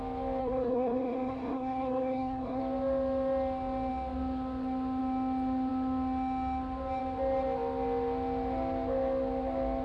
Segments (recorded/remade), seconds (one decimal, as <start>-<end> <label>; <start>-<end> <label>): 0.0-0.4 recorded; 0.4-2.6 remade; 2.6-9.8 recorded